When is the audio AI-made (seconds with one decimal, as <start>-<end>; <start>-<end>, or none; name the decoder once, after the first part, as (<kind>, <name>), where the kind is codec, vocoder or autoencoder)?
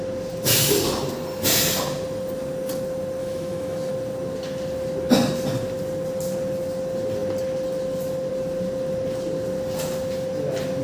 3.2-3.9 (autoencoder, DAC-VAE)